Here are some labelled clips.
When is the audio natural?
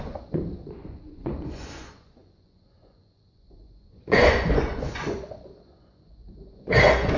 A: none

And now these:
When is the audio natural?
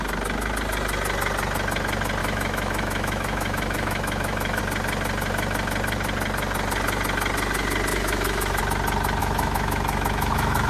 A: 0.0-2.2; 4.6-7.9; 8.6-9.2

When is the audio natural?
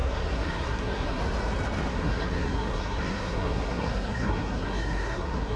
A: 1.2-1.9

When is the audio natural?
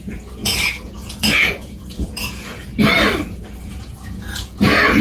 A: 2.7-3.6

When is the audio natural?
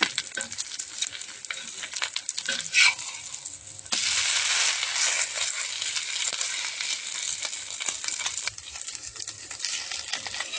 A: 0.0-10.6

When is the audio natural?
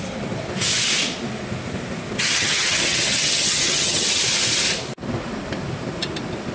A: 0.0-2.2; 4.2-6.5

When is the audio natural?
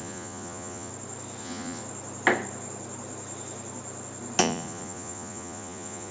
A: 0.9-1.4; 1.8-4.4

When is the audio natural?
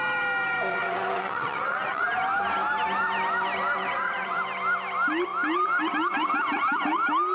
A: 0.0-0.7; 2.0-3.8; 4.4-7.3